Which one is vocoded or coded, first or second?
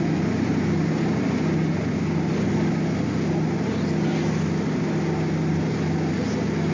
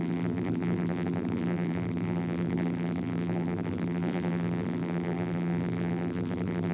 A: second